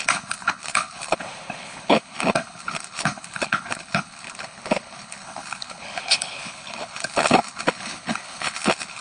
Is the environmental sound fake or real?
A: fake